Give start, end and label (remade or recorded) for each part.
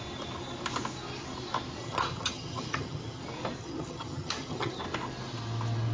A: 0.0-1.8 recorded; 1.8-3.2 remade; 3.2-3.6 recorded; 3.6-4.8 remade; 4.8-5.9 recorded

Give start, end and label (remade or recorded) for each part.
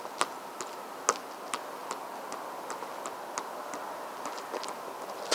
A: 0.0-5.3 recorded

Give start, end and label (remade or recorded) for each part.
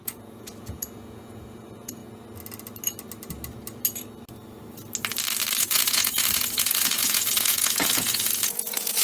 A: 0.0-2.0 remade; 2.0-5.6 recorded; 5.6-9.0 remade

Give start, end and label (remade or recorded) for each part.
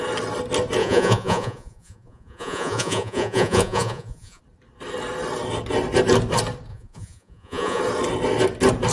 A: 0.0-0.8 recorded; 0.8-4.4 remade; 4.4-6.7 recorded; 6.7-7.8 remade; 7.8-8.9 recorded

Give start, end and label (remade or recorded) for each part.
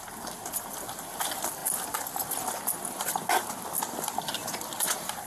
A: 0.0-5.3 recorded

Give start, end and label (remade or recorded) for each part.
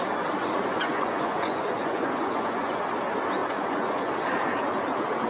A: 0.0-0.4 recorded; 0.4-2.9 remade; 2.9-3.4 recorded; 3.4-4.1 remade; 4.1-5.3 recorded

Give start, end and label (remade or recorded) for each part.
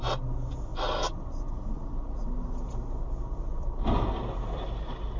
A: 0.0-0.7 recorded; 0.7-3.8 remade; 3.8-5.2 recorded